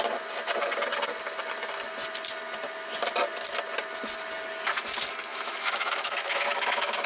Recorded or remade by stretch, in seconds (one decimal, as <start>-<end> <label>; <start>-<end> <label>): 0.0-5.3 recorded; 5.3-7.1 remade